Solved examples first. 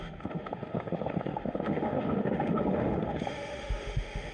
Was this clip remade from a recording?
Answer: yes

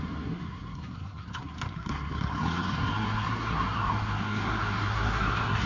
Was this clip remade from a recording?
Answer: yes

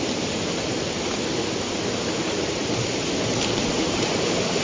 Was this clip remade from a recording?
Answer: no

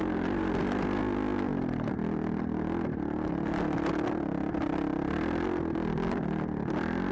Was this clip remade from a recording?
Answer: no